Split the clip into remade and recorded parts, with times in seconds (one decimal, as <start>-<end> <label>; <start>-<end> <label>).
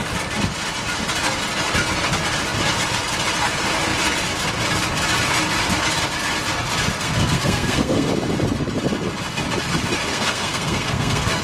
0.0-7.0 recorded; 7.0-8.1 remade; 8.1-10.1 recorded; 10.1-11.4 remade